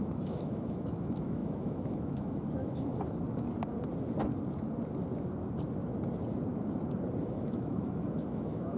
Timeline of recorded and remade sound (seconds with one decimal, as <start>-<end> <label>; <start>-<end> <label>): 0.0-2.9 remade; 2.9-7.2 recorded; 7.2-8.8 remade